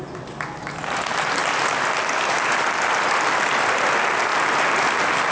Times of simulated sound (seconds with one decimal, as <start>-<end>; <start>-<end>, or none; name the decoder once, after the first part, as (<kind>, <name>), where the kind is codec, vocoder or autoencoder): none